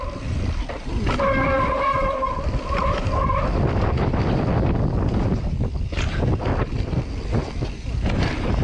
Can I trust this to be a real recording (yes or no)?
yes